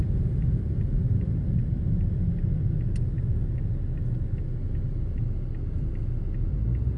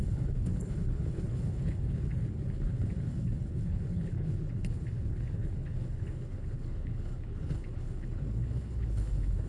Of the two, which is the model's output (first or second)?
second